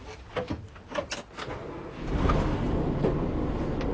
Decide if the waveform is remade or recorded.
recorded